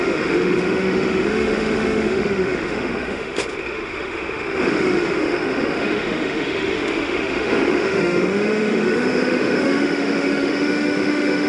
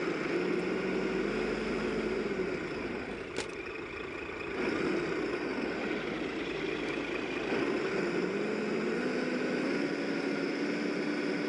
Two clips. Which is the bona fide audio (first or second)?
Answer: second